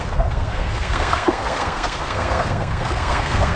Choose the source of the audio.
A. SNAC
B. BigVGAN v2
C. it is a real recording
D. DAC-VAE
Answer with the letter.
A